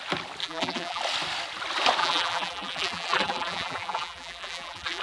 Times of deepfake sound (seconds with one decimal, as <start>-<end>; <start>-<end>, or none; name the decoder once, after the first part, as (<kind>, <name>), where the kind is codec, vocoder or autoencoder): 0.4-1.0 (vocoder, BigVGAN v2); 2.0-5.0